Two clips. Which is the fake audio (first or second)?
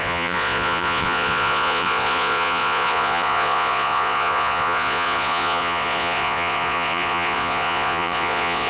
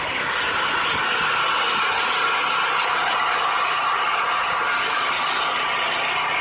first